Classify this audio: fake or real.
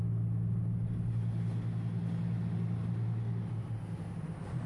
real